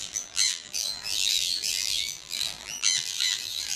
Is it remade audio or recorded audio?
remade